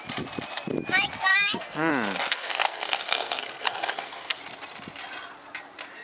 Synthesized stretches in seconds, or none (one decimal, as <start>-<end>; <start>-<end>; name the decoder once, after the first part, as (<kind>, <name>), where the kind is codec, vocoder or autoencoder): 1.3-1.9 (codec, SNAC); 2.3-4.4

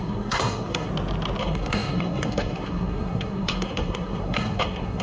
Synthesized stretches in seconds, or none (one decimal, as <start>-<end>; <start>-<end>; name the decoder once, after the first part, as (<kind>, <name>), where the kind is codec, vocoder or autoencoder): 0.0-0.9 (codec, SNAC); 1.4-5.0

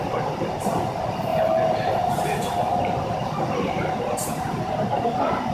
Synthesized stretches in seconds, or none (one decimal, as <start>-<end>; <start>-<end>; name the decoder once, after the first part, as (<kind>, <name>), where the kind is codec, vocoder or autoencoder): 1.3-4.6 (vocoder, BigVGAN v2)

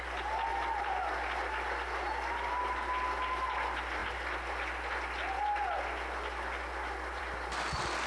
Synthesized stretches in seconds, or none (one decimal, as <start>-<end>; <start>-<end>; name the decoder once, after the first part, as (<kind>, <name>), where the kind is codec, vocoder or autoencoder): none

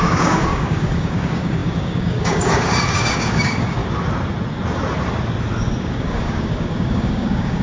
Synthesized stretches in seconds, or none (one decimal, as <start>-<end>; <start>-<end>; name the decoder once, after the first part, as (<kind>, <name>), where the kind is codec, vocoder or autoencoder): 0.0-3.8 (codec, DAC); 5.8-7.6